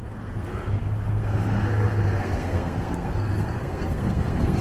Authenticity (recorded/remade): remade